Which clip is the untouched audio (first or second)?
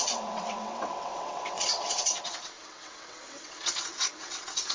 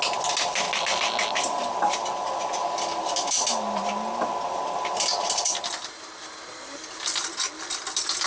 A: second